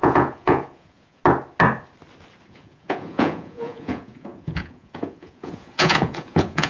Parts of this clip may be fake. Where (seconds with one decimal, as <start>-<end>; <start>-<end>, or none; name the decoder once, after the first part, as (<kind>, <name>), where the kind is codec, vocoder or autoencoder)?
0.0-1.2 (vocoder, Vocos); 2.5-6.7